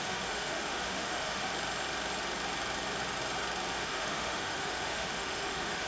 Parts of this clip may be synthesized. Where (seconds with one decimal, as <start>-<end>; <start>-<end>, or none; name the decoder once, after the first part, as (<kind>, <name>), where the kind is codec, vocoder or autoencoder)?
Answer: 0.0-1.5 (autoencoder, DAC-VAE); 3.7-5.9